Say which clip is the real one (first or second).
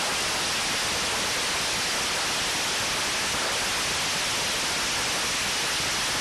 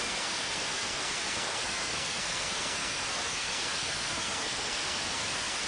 first